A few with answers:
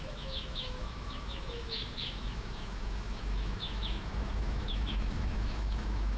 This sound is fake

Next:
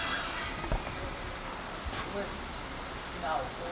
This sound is real